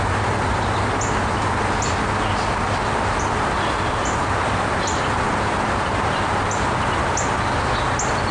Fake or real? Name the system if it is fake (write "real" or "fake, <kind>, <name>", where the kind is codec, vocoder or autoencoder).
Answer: real